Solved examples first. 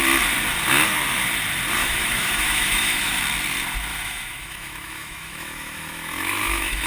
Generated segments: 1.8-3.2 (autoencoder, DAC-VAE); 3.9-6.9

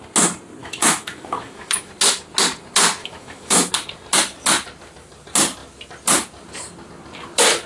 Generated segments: 0.6-1.9 (autoencoder, DAC-VAE); 3.0-3.7